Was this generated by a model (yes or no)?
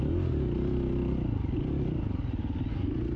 no